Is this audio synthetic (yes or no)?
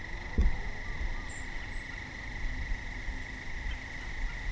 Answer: no